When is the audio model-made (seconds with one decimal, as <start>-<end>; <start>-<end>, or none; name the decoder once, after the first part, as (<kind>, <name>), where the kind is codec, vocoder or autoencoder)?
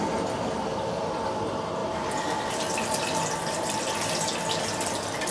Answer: 0.7-1.4 (vocoder, BigVGAN v2); 1.8-3.9